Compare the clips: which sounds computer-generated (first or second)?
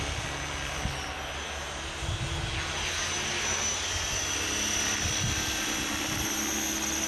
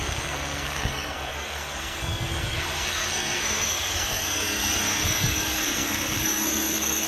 second